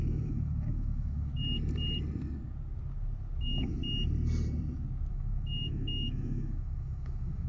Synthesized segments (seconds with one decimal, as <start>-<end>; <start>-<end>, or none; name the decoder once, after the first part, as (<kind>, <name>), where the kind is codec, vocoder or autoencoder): 0.0-1.3 (autoencoder, DAC-VAE); 3.4-3.8; 5.1-7.5